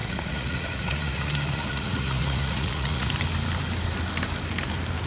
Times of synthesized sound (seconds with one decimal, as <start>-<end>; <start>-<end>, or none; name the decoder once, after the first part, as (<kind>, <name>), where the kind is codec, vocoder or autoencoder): 0.0-3.1 (vocoder, Vocos)